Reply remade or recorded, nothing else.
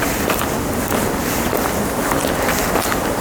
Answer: recorded